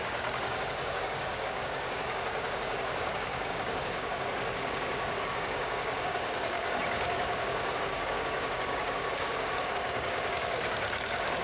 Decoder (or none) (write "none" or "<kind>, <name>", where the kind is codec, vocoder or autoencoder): codec, DAC